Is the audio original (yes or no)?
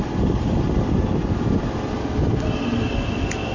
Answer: yes